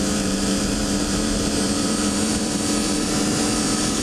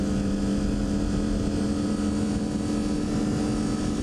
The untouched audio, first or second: second